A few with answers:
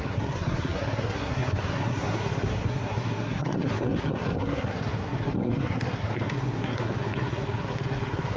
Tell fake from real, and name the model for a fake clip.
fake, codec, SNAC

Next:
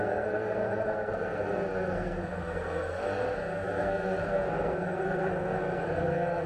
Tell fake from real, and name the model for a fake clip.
fake, codec, SNAC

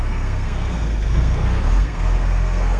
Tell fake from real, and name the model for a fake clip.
fake, codec, SNAC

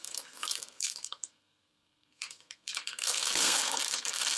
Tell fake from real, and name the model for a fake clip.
fake, codec, SNAC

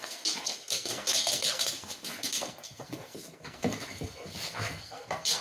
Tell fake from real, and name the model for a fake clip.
fake, codec, SNAC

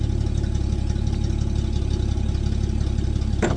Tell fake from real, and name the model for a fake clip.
real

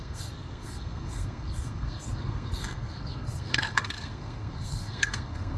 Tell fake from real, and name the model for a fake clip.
fake, codec, SNAC